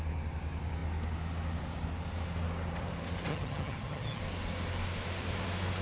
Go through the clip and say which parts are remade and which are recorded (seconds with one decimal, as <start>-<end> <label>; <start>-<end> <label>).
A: 0.0-3.3 recorded; 3.3-4.2 remade; 4.2-5.8 recorded